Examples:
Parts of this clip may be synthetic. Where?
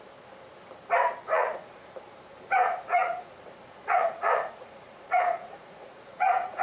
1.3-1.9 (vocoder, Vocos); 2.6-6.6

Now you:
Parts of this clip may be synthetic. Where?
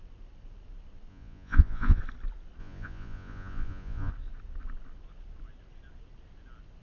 1.1-2.0 (vocoder, Vocos); 2.6-4.1